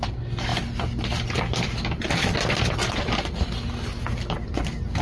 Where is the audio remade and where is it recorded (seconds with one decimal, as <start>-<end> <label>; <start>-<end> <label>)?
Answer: 0.0-5.0 recorded